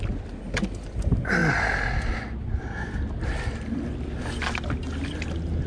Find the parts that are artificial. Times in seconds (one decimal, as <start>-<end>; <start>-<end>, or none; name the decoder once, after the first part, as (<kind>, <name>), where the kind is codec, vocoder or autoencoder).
none